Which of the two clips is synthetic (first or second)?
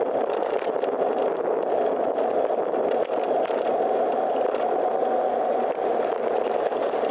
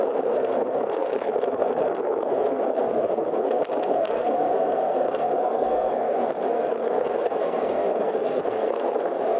second